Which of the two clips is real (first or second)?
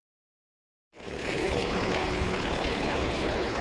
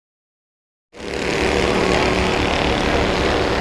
second